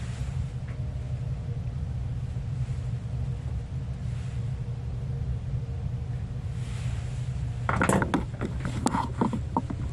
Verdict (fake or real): real